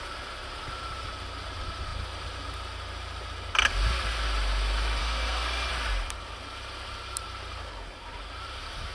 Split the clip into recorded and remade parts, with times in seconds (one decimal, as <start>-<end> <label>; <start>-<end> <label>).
0.0-5.0 recorded; 5.0-5.7 remade; 5.7-8.9 recorded